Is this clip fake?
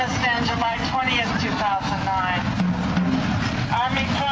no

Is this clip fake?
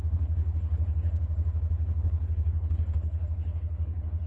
yes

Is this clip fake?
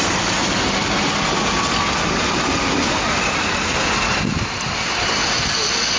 no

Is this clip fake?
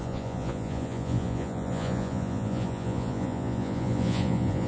yes